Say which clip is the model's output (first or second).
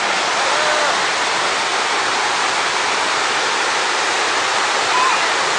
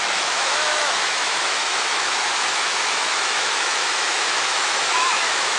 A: second